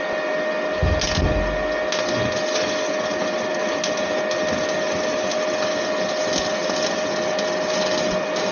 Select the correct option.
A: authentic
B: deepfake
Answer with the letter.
A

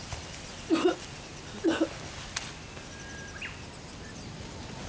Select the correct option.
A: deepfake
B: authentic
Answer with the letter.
B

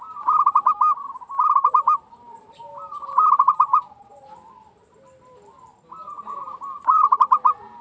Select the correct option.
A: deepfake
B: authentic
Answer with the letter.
B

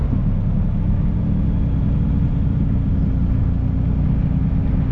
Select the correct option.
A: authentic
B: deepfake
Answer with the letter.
A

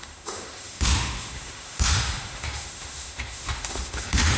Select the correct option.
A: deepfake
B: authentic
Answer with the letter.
A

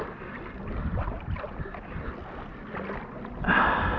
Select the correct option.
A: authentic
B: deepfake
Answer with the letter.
A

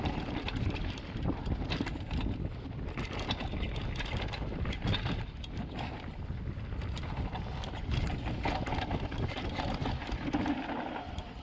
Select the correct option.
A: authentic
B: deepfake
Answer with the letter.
A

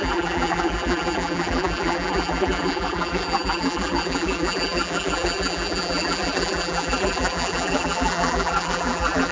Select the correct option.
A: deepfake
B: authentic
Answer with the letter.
A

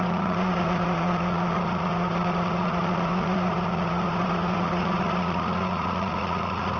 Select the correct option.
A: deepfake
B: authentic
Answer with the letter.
A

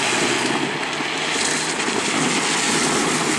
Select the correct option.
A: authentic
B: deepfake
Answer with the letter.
A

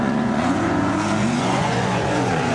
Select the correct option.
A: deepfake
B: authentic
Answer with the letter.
A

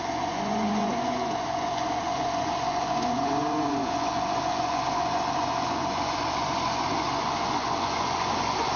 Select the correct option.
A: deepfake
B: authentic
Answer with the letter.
A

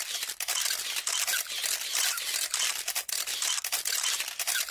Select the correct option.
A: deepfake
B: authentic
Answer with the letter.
B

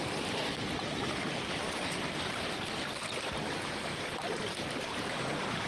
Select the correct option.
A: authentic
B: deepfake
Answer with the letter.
A